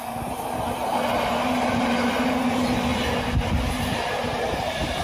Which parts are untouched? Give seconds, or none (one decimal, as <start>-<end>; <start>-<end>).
0.0-5.0